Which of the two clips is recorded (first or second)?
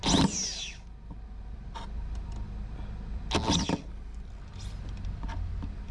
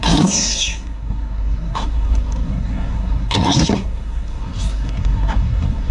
first